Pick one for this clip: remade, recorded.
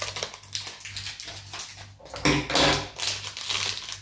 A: recorded